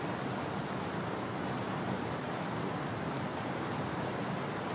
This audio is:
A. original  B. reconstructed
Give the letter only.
A